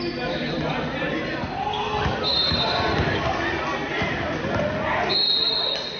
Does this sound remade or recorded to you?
recorded